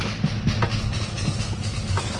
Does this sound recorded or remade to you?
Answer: recorded